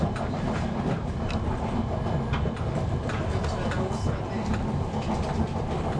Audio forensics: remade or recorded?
recorded